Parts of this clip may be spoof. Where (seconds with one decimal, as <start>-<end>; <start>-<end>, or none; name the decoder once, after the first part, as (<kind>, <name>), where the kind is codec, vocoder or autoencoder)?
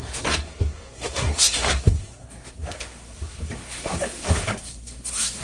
0.0-5.4 (codec, SNAC)